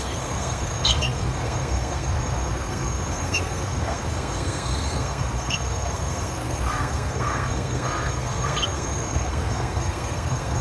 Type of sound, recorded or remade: remade